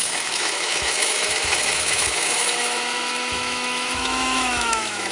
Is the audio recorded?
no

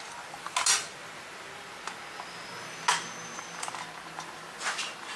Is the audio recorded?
yes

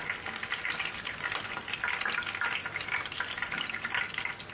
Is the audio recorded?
yes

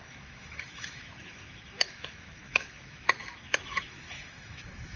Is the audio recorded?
no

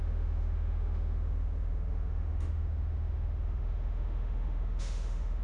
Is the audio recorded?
no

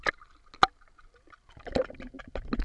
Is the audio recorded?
yes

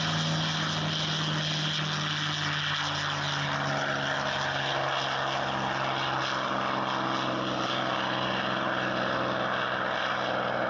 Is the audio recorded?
yes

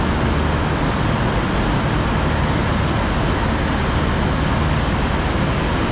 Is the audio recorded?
yes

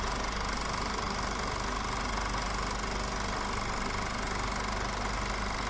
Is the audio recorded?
yes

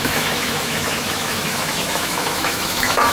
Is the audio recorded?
no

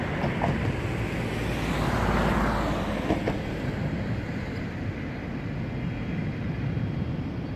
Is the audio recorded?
yes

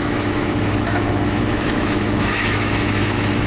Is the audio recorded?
no